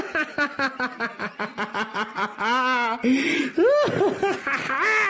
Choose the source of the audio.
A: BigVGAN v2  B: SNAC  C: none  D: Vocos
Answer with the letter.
C